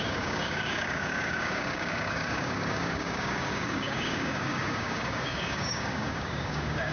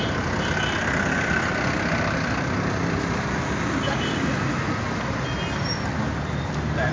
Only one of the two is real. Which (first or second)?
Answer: second